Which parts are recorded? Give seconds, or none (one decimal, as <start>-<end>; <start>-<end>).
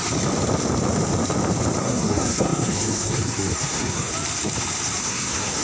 0.0-1.8; 4.1-5.0